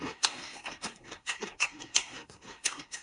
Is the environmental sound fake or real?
fake